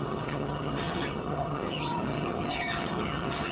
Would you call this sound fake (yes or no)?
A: yes